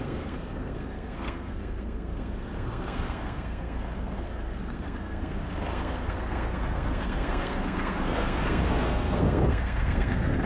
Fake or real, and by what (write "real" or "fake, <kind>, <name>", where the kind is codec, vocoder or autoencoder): fake, codec, SNAC